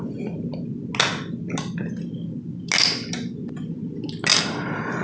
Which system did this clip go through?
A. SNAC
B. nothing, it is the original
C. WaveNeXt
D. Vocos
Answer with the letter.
B